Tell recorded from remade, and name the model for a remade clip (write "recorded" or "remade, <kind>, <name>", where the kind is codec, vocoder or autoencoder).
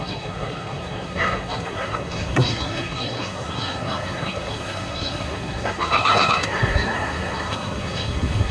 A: remade, codec, SNAC